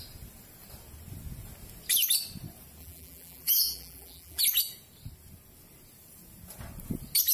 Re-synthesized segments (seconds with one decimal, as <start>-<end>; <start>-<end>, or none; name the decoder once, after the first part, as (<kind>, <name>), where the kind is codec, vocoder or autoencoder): 2.8-4.4 (vocoder, BigVGAN v2)